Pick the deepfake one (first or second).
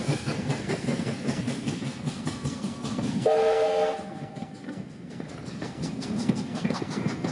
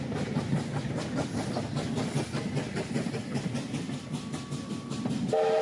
first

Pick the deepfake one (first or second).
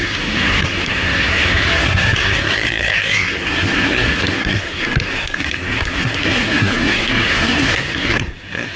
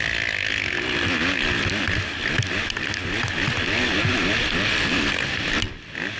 first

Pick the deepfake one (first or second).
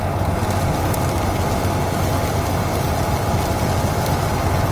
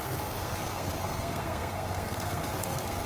second